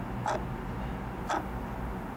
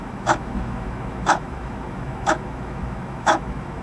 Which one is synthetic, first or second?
second